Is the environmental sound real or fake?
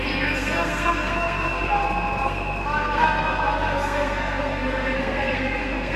fake